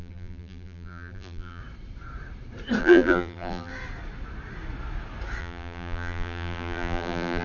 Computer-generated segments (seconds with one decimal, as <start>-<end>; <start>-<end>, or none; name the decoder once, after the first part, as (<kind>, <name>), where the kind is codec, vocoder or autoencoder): 0.0-1.6 (vocoder, BigVGAN v2); 2.8-3.7; 5.4-7.4